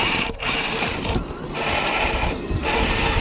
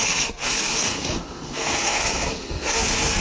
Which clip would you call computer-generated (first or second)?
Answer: second